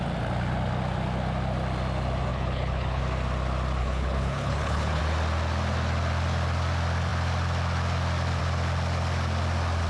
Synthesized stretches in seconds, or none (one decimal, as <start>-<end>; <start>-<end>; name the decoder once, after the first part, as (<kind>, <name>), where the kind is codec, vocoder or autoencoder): 2.3-3.0 (codec, HILCodec); 3.8-5.0